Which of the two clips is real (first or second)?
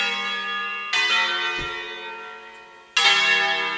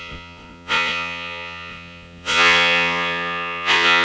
first